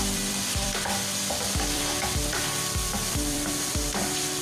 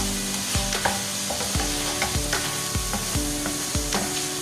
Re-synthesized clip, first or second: first